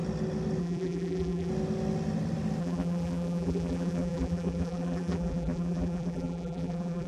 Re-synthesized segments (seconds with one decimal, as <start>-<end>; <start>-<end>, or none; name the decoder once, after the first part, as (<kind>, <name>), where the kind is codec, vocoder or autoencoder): 0.6-1.5 (vocoder, BigVGAN v2); 2.6-7.1